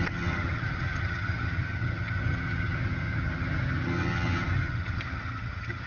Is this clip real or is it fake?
fake